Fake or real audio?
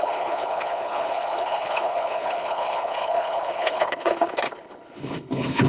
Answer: fake